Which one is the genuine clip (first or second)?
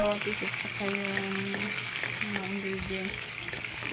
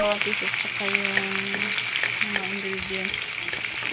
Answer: second